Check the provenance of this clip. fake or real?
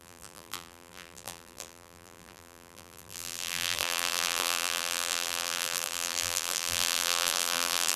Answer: fake